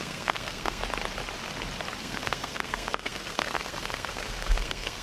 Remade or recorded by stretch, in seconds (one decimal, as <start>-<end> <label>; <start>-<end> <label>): 0.0-0.8 remade; 0.8-2.0 recorded; 2.0-5.0 remade

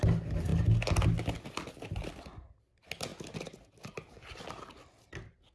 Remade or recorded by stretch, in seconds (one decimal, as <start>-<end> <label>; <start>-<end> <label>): 0.0-5.5 recorded